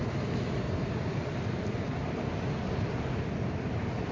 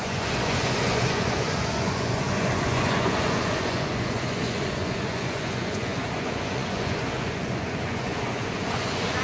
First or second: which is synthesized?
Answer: second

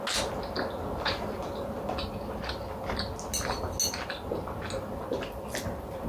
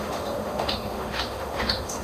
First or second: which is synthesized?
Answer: second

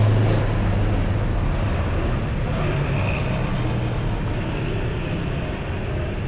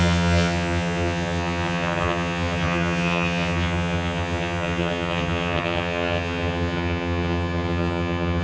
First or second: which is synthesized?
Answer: second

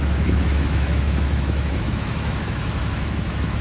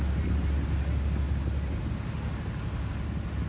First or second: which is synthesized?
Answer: first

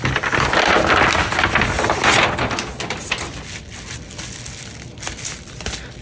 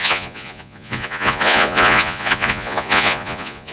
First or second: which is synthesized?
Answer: second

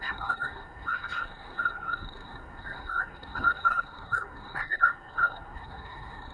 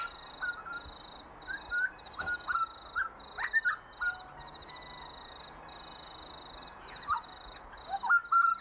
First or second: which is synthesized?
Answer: first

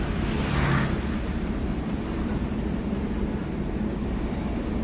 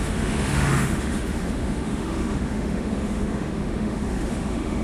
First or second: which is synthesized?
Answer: second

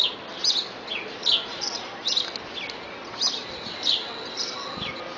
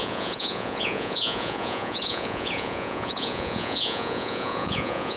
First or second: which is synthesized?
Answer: second